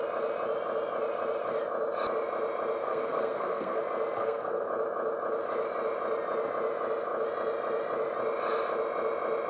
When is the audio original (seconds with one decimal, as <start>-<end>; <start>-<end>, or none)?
0.0-2.8; 3.8-4.2; 4.7-9.5